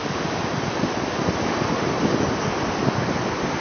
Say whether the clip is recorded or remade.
recorded